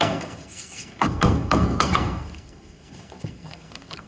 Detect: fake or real fake